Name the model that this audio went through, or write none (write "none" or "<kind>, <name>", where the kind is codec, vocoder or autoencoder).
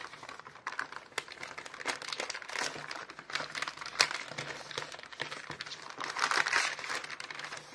none